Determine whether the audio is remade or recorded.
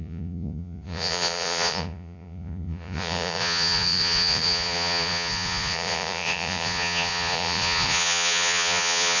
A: remade